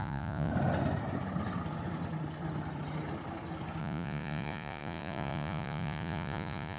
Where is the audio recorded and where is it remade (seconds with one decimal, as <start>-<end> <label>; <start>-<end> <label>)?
0.0-0.5 remade; 0.5-3.8 recorded; 3.8-6.8 remade